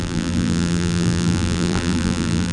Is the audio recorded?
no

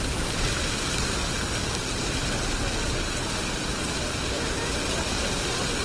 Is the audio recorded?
yes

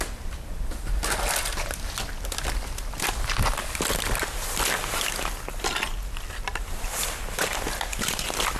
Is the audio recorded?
yes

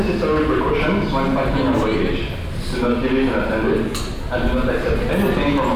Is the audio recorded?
yes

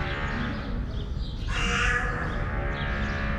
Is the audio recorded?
yes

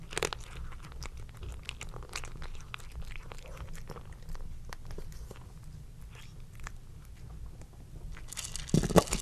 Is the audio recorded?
yes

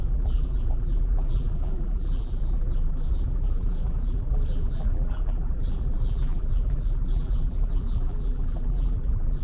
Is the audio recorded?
no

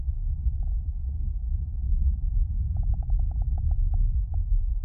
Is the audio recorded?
no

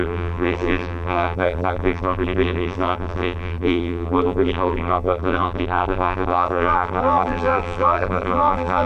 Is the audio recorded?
no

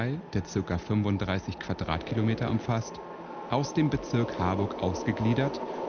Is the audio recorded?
yes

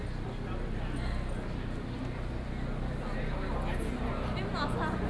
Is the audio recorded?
yes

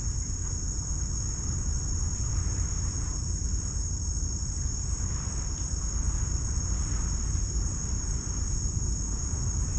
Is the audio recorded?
no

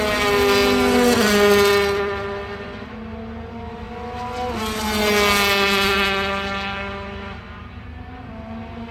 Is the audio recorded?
yes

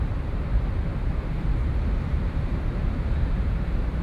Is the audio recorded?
no